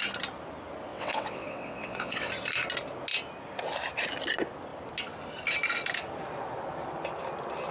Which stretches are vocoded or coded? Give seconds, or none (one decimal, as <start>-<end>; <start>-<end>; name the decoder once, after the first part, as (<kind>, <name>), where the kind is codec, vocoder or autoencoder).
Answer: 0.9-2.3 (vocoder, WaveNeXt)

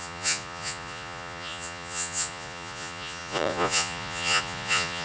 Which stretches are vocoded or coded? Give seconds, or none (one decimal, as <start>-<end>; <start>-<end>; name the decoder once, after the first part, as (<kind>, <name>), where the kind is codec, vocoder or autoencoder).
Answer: 0.0-5.0 (vocoder, Vocos)

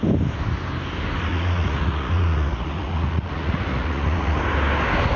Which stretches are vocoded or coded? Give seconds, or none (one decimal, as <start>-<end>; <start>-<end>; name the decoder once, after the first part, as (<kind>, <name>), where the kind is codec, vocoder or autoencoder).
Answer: 1.3-4.4 (vocoder, Vocos)

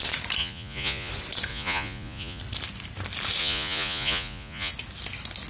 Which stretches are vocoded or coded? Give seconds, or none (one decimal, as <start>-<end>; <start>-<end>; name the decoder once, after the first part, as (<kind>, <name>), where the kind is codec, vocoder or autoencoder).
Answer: 0.4-1.1 (vocoder, Vocos); 1.5-2.4; 3.4-4.7